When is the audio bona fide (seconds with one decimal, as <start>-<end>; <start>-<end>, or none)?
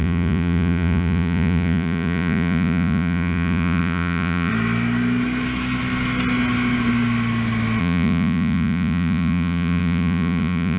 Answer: 4.5-7.8